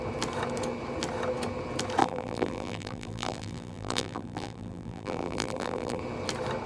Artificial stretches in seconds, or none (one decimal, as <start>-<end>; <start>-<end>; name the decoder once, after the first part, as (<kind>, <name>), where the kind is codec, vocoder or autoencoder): 2.0-6.0 (vocoder, BigVGAN v2)